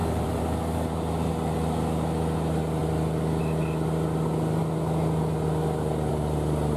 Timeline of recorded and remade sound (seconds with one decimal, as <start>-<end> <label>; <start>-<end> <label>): 0.0-1.3 remade; 1.3-6.8 recorded